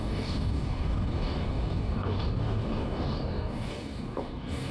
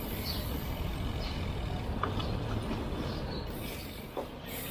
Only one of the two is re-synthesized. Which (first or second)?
first